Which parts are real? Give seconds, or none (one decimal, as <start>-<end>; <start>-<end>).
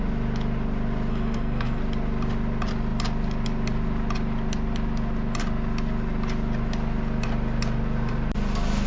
0.0-1.1; 1.8-8.9